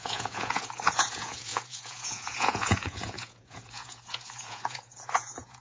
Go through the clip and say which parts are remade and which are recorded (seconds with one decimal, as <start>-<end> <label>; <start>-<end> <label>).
0.0-5.6 remade